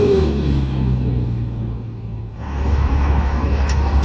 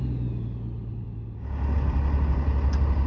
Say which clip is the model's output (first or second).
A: first